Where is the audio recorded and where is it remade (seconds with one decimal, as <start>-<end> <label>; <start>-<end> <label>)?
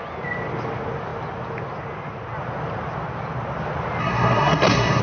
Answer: 0.0-4.0 recorded; 4.0-5.0 remade